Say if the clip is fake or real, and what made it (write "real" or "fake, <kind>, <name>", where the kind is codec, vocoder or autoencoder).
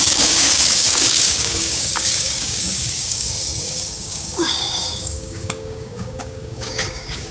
fake, codec, DAC